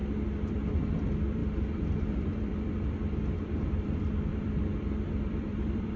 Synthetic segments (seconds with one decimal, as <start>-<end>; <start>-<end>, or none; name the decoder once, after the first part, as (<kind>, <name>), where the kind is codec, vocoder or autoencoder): 0.5-6.0 (vocoder, BigVGAN v2)

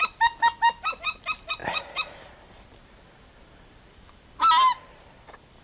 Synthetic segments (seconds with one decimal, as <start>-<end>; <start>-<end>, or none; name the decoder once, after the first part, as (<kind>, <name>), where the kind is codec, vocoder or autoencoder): 1.6-2.7 (vocoder, BigVGAN v2)

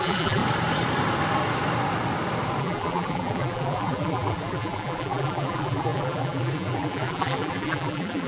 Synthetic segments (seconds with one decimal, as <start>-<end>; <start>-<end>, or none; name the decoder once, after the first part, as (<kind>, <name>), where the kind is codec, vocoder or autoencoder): 0.0-0.4 (vocoder, BigVGAN v2); 2.6-8.3

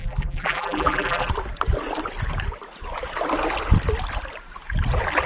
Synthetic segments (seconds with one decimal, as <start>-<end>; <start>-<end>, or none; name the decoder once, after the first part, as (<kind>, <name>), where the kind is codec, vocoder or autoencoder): 0.0-1.3 (vocoder, BigVGAN v2)

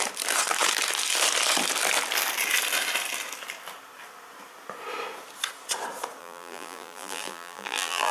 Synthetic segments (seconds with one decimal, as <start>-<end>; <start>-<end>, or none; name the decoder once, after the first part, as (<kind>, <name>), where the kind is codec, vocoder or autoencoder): 6.2-8.1 (vocoder, BigVGAN v2)

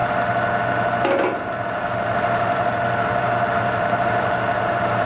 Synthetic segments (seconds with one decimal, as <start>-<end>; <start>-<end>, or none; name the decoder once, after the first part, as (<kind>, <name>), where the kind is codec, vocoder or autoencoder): 1.3-5.1 (vocoder, BigVGAN v2)

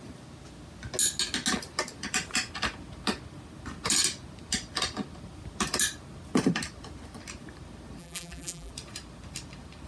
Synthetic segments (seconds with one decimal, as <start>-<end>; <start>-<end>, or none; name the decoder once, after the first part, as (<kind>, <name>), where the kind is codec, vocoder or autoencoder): 8.0-8.7 (vocoder, BigVGAN v2)

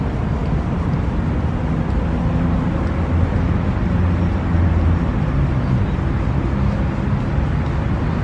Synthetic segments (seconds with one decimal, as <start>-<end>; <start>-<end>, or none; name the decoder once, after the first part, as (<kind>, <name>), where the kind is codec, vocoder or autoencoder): none